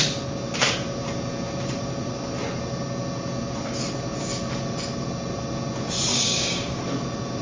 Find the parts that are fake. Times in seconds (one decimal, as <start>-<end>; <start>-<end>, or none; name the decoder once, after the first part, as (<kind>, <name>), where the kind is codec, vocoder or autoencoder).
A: 6.1-6.8 (codec, DAC)